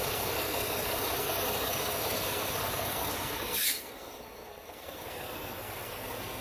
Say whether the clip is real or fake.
fake